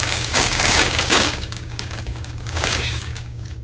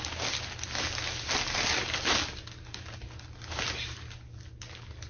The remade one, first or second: first